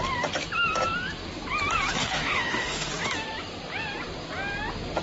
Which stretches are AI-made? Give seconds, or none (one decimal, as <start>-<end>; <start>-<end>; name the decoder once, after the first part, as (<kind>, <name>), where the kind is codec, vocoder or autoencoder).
2.0-2.9 (autoencoder, DAC-VAE)